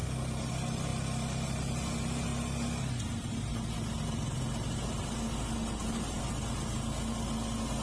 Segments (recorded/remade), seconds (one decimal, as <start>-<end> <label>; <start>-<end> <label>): 0.0-7.8 recorded